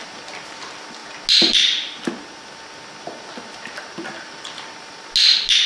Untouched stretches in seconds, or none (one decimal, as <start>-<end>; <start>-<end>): 0.0-5.7